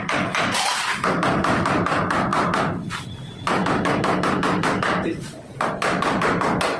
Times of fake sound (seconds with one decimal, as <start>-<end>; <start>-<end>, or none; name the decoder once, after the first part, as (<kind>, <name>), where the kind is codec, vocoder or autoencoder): none